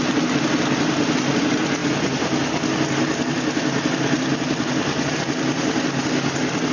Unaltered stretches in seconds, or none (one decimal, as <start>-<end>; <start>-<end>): 0.0-6.7